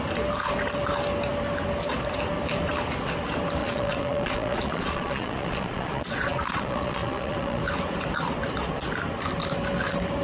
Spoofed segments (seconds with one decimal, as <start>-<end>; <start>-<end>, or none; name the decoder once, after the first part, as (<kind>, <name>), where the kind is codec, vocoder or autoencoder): 3.6-7.6 (vocoder, Vocos)